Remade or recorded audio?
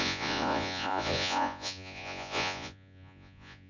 remade